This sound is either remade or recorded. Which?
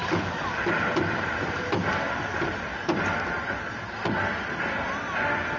remade